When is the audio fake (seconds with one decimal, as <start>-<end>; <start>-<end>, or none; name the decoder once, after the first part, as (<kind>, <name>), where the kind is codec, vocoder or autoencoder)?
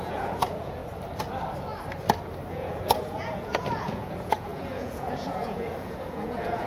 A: 0.0-0.8 (vocoder, Vocos); 2.5-6.7